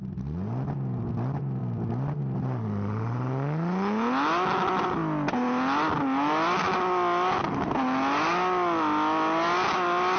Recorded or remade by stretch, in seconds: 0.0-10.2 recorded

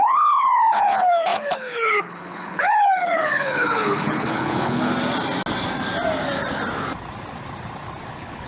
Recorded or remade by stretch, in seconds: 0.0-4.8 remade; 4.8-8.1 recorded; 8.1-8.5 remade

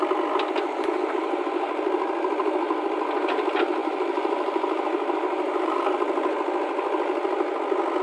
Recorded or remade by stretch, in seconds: 0.0-3.8 recorded; 3.8-5.8 remade; 5.8-8.0 recorded